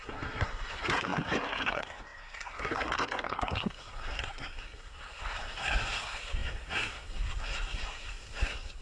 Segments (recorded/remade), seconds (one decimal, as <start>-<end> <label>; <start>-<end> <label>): 0.0-8.8 remade